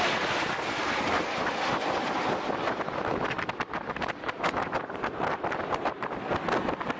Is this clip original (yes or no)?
yes